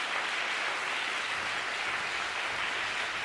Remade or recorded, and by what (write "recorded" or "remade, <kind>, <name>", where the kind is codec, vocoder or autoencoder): recorded